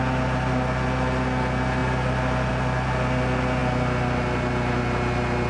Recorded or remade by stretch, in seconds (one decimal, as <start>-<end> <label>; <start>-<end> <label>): 0.0-5.5 recorded